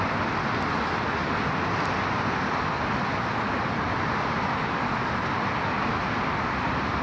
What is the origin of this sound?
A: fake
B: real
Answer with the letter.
B